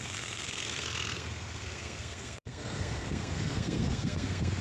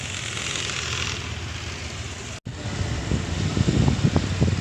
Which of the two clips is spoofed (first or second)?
first